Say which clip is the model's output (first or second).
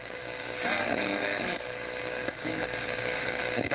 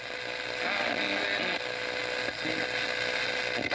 first